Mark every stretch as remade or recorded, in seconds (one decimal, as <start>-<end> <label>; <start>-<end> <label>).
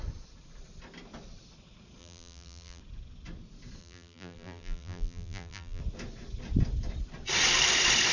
0.0-2.0 recorded; 2.0-2.8 remade; 2.8-3.8 recorded; 3.8-5.8 remade; 5.8-8.1 recorded